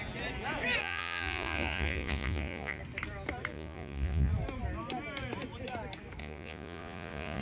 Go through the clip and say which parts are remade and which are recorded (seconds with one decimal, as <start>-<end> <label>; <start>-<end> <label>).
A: 0.0-0.8 recorded; 0.8-2.8 remade; 2.8-3.5 recorded; 3.5-4.3 remade; 4.3-6.2 recorded; 6.2-7.4 remade